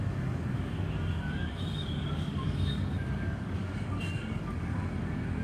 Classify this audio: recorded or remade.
remade